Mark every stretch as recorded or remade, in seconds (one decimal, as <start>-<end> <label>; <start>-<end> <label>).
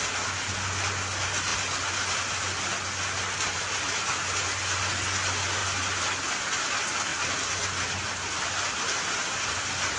0.0-10.0 recorded